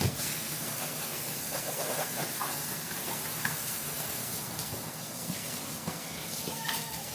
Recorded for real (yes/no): no